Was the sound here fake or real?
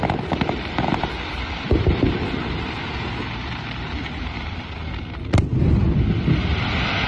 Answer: fake